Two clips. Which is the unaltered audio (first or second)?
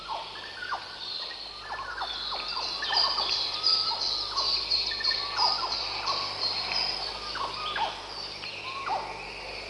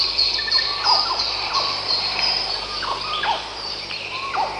first